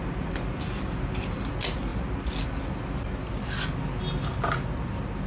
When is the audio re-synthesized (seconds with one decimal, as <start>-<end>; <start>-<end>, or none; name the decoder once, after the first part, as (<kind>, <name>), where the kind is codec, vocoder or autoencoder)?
0.0-1.5 (vocoder, BigVGAN v2)